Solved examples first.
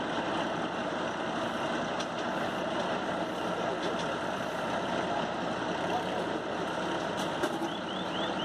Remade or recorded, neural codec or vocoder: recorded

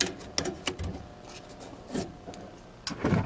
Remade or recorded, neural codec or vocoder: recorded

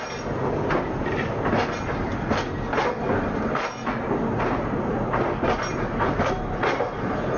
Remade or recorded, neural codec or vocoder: recorded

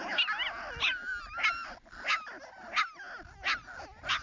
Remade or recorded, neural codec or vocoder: recorded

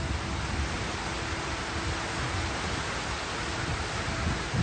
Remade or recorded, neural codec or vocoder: recorded